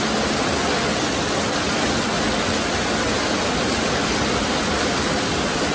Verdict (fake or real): real